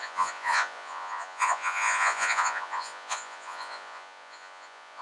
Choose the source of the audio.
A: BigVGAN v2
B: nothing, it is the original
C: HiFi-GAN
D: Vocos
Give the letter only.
D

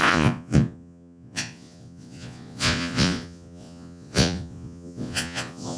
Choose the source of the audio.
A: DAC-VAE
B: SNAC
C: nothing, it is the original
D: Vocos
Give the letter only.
D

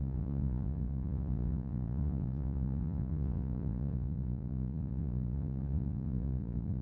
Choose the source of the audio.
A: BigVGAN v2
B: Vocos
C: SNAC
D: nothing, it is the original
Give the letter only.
B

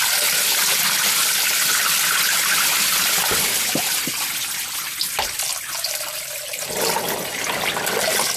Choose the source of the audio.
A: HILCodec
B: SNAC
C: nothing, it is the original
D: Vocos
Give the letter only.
C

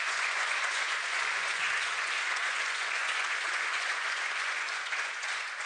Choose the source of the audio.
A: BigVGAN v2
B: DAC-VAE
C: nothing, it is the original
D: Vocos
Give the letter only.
D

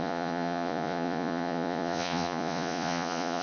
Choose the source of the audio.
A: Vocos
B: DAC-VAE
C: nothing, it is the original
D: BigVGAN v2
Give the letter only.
A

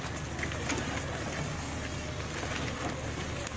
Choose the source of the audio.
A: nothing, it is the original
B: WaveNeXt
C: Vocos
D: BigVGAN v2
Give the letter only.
A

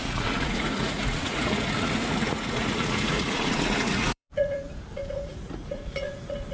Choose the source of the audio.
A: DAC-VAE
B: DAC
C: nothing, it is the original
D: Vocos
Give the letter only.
D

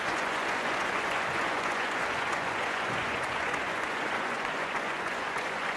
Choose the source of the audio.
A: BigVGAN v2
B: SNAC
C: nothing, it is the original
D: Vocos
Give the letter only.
D